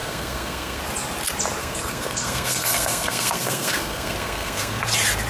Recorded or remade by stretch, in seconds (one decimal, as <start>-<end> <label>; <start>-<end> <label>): 0.0-0.8 remade; 0.8-1.6 recorded; 1.6-4.8 remade; 4.8-5.3 recorded